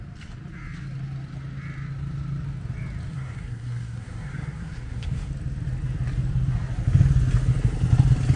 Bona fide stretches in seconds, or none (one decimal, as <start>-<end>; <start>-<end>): 0.0-3.1; 5.3-8.4